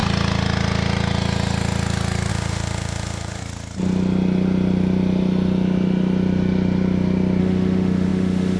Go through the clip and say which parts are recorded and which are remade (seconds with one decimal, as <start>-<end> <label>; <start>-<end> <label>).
0.0-2.3 recorded; 2.3-3.4 remade; 3.4-7.4 recorded; 7.4-8.6 remade